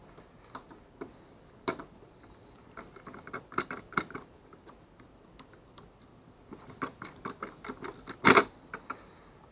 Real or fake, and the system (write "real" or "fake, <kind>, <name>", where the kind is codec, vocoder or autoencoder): real